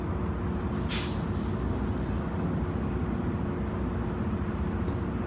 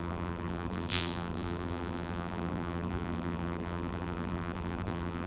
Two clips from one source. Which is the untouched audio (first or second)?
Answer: first